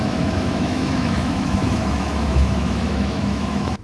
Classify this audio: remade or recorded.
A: remade